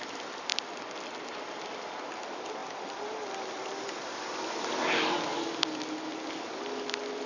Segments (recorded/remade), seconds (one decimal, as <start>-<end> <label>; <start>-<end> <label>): 0.0-7.3 recorded